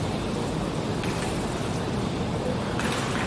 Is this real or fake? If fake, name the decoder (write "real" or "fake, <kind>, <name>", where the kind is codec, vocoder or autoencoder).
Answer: real